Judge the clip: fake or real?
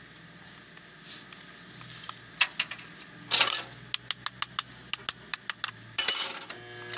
real